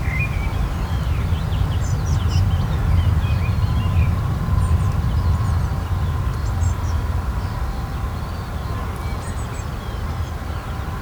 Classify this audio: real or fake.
real